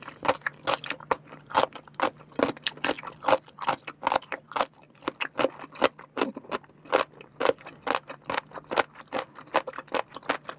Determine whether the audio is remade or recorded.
recorded